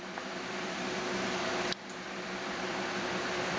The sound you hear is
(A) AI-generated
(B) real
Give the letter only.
A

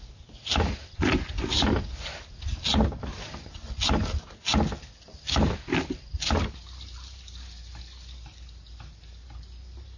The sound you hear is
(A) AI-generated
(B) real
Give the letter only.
B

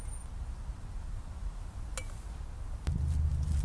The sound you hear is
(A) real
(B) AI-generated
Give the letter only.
A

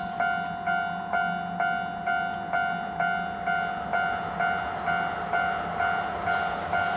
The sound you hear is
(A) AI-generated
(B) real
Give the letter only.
B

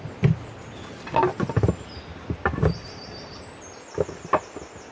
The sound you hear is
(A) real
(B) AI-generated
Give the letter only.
A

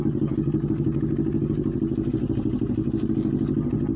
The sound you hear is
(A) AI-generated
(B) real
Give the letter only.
B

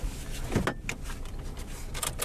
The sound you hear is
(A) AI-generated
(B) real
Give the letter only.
B